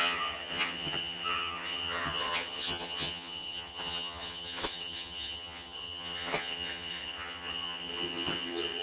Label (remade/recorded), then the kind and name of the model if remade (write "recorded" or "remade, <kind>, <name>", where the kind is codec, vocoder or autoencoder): remade, vocoder, HiFi-GAN